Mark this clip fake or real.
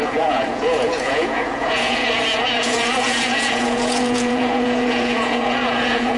fake